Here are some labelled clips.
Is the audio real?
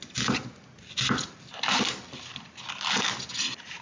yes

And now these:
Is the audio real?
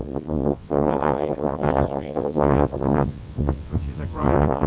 no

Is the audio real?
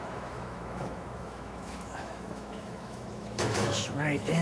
no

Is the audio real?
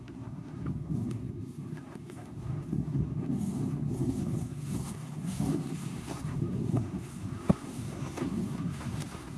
no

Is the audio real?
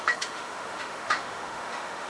no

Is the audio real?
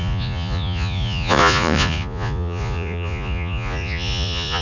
no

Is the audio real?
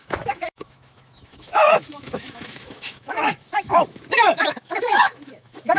no